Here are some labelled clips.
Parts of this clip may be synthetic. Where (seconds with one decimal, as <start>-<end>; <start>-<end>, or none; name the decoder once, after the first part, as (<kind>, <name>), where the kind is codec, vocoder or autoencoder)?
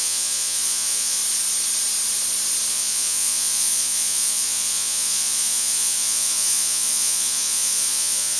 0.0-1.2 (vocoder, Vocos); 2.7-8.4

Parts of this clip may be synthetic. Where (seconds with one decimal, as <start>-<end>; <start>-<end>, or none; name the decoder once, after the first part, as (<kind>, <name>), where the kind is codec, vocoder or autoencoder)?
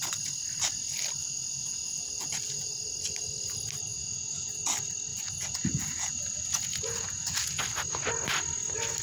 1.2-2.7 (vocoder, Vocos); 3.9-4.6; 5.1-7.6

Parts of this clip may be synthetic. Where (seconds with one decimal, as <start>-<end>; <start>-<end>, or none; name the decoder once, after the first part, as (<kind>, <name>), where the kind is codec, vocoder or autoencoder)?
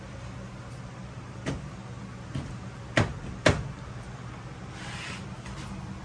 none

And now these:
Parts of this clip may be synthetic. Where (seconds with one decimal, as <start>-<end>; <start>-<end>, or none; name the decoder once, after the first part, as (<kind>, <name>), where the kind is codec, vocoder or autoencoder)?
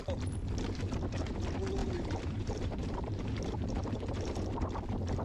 1.8-4.6 (vocoder, BigVGAN v2)